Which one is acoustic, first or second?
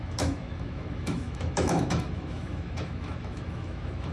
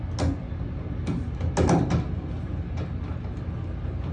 second